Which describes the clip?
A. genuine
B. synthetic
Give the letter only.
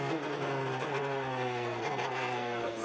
B